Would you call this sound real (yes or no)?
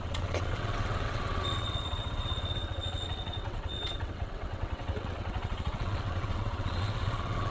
no